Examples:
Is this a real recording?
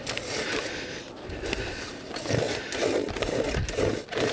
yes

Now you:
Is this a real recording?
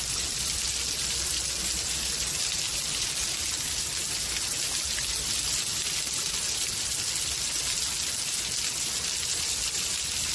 yes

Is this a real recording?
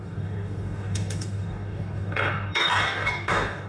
no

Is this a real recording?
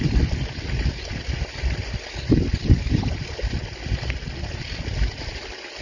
yes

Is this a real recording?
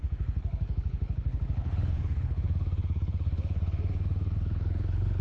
no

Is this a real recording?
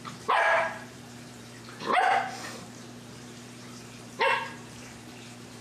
no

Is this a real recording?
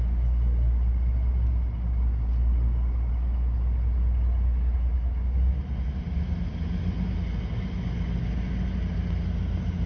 yes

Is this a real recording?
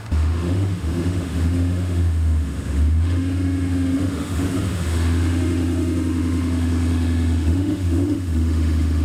no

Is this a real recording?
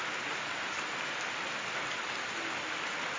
yes